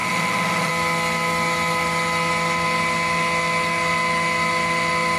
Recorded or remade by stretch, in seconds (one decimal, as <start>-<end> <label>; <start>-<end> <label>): 0.0-0.7 remade; 0.7-5.2 recorded

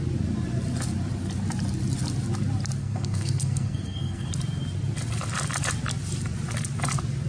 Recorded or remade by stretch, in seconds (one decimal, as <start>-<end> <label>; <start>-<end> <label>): 0.0-2.8 recorded; 2.8-4.3 remade; 4.3-7.3 recorded

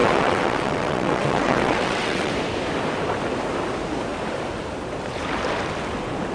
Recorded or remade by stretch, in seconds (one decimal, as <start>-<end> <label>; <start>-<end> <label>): 0.0-2.3 remade; 2.3-6.3 recorded